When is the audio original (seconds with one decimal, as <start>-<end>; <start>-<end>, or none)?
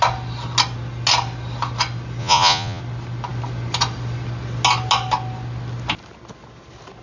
0.0-2.2; 2.8-7.0